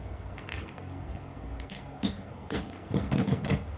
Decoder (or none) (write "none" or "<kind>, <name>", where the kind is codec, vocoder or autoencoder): codec, SNAC